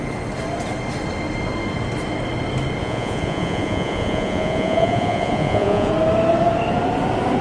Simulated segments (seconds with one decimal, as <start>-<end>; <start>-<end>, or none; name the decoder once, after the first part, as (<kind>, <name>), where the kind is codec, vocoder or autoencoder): 2.8-5.9 (vocoder, Vocos)